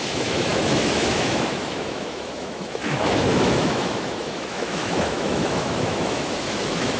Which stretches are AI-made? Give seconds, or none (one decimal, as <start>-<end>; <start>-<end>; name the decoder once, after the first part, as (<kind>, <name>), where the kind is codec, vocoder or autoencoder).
0.0-7.0 (autoencoder, DAC-VAE)

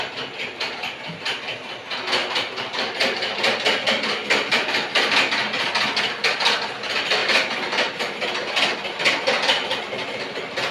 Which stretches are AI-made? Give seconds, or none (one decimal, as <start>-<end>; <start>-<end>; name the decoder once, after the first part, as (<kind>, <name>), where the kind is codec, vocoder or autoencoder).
2.2-5.3 (vocoder, BigVGAN v2)